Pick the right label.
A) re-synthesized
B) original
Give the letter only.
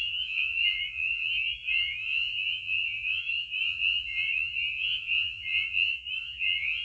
A